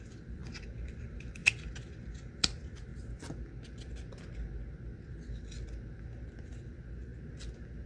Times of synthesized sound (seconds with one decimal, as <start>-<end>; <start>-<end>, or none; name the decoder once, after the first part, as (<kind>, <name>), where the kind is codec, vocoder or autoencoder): 0.0-2.9 (vocoder, BigVGAN v2); 6.4-7.1